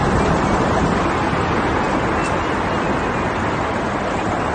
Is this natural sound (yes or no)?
yes